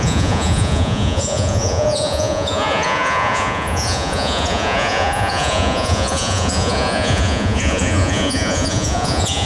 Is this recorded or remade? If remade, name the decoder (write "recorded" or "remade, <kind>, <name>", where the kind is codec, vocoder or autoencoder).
remade, vocoder, Vocos